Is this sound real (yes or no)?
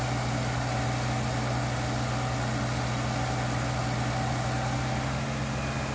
yes